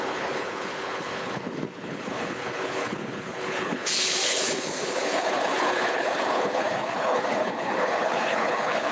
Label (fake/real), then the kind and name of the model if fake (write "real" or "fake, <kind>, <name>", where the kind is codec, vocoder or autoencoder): fake, codec, HILCodec